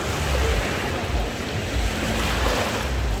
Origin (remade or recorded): recorded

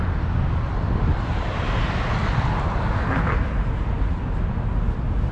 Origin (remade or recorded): recorded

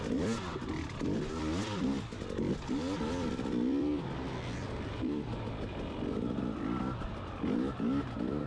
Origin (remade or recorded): remade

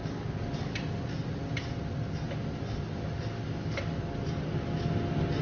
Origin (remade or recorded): recorded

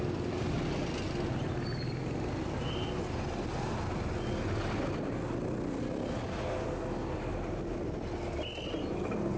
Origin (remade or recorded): recorded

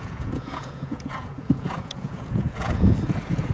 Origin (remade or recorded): remade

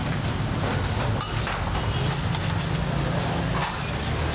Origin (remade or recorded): recorded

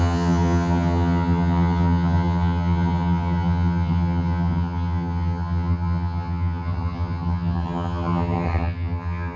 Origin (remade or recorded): remade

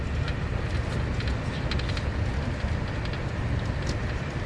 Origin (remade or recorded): recorded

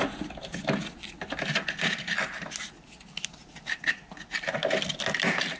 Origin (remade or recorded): recorded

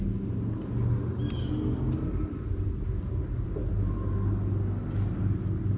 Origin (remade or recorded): recorded